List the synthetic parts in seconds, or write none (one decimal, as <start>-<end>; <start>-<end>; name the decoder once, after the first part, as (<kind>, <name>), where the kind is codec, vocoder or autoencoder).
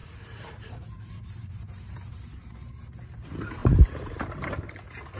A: 0.0-2.7 (vocoder, BigVGAN v2); 3.6-4.6